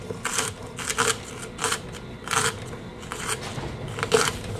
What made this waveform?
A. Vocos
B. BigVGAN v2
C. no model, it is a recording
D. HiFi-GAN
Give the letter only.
C